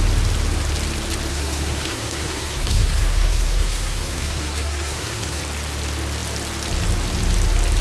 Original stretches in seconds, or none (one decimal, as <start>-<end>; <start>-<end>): 0.0-1.3; 5.4-7.8